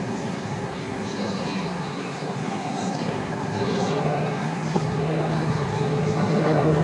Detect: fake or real fake